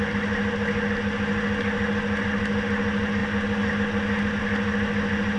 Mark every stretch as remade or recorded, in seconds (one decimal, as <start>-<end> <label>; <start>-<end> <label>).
0.0-5.4 recorded